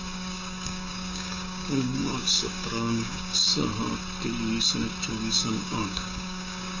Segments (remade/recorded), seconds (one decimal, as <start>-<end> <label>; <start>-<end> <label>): 0.0-3.5 remade; 3.5-5.1 recorded; 5.1-6.8 remade